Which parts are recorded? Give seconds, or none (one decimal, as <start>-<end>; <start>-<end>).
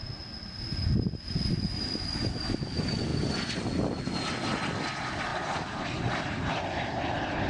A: 0.0-7.5